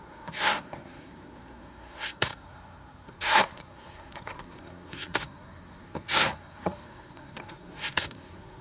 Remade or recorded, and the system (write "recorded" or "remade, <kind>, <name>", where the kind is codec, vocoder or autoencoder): remade, codec, SNAC